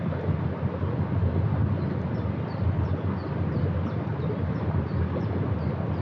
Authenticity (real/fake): real